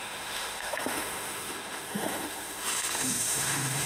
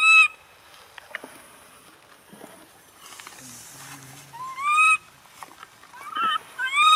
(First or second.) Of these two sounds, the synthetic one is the first